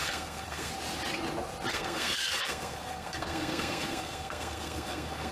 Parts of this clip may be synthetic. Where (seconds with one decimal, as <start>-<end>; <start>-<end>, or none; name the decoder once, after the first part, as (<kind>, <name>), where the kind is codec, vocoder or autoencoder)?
0.0-0.7 (codec, SNAC); 1.7-5.3